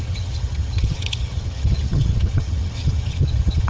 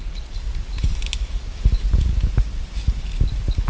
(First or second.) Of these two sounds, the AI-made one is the first